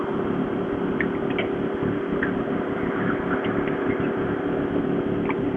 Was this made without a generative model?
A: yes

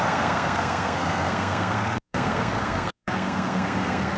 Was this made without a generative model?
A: no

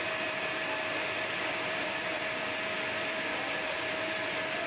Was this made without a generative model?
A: no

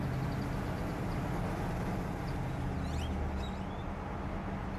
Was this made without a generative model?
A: yes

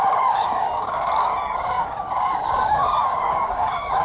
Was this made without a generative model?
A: no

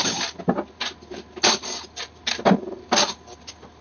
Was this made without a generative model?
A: yes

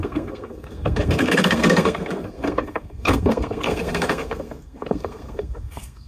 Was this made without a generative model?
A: no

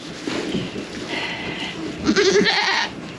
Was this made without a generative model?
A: yes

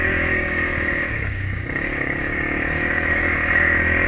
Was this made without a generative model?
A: no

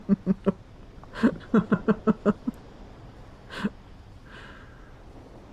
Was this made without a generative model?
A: yes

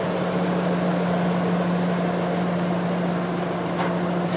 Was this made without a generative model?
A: yes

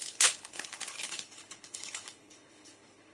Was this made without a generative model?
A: no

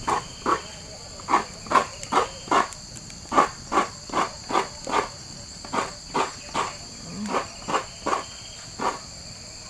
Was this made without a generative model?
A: yes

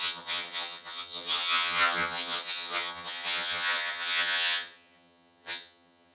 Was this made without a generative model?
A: no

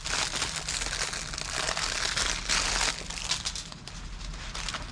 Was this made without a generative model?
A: yes